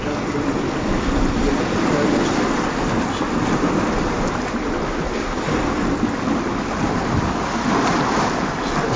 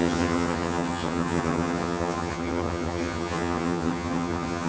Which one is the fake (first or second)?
second